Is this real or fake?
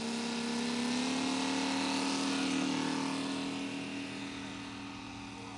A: real